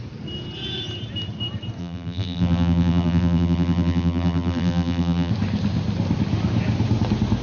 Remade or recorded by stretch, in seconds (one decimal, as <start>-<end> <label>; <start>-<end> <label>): 0.0-1.8 recorded; 1.8-5.3 remade; 5.3-7.4 recorded